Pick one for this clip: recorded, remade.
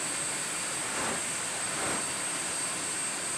recorded